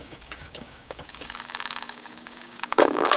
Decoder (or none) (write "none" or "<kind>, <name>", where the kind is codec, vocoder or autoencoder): codec, DAC